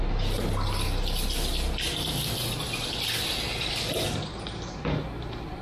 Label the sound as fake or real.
real